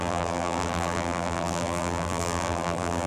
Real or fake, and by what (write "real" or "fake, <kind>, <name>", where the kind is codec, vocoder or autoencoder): fake, vocoder, BigVGAN v2